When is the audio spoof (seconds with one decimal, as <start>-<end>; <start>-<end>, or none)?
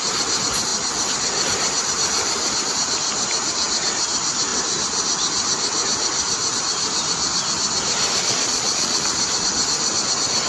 8.2-9.0